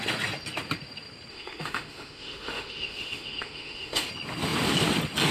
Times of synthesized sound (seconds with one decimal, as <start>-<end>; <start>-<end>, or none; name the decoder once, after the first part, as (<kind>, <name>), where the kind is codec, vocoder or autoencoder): 1.3-4.1 (autoencoder, DAC-VAE)